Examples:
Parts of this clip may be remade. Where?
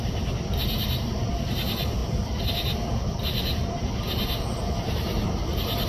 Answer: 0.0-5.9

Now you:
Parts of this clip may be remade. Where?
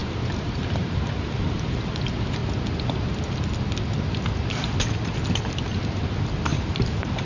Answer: 0.0-1.9; 6.5-7.2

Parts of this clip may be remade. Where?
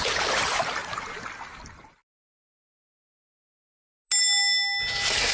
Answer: 0.0-0.8; 1.6-2.0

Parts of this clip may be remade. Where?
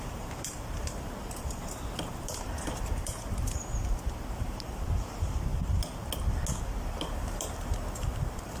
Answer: 0.0-3.6; 4.3-5.5; 6.6-8.6